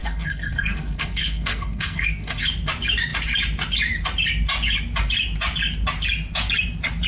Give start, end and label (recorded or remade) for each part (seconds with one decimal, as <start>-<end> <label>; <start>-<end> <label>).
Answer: 0.0-2.4 remade; 2.4-7.1 recorded